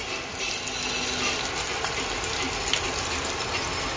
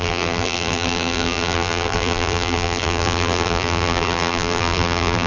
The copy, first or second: second